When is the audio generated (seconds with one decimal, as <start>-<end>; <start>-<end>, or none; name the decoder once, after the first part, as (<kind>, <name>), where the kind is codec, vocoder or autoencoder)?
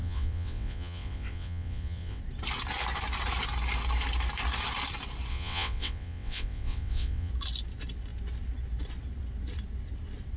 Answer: 0.0-2.2 (vocoder, WaveNeXt); 5.3-7.3